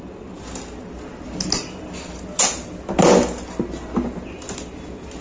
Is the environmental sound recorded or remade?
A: recorded